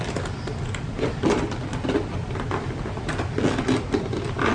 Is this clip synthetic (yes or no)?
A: no